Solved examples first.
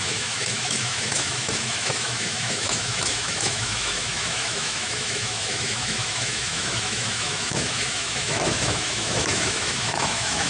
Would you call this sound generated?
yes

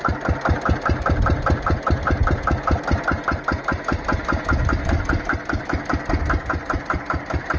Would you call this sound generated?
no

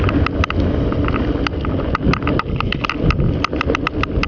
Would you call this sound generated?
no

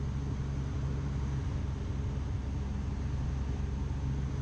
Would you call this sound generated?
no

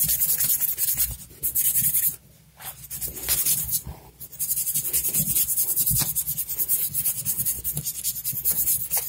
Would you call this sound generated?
no